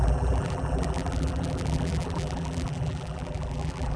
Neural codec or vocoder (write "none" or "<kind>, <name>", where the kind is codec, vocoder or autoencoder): vocoder, BigVGAN v2